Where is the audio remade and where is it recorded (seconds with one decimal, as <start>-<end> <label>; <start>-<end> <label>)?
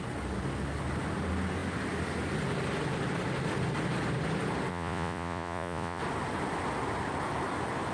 0.0-4.7 recorded; 4.7-6.0 remade; 6.0-7.9 recorded